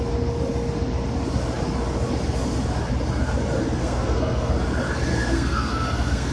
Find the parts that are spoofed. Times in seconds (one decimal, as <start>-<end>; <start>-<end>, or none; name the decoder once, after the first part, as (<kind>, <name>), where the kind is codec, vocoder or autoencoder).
3.8-4.5 (codec, SNAC); 5.1-6.3